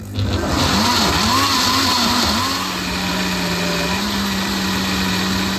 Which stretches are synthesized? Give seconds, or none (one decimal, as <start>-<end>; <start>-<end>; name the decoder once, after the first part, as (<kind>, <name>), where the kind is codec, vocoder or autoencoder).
none